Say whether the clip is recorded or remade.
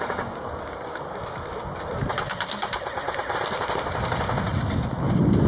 recorded